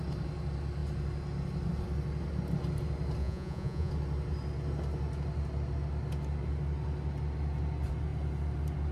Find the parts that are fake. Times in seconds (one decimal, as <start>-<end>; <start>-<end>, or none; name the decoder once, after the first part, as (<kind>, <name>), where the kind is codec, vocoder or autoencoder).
3.2-3.9 (vocoder, Vocos)